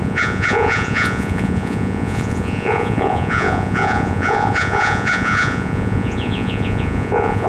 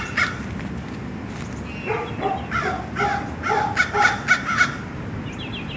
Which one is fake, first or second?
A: first